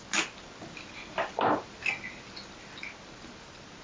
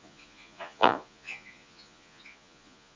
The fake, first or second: second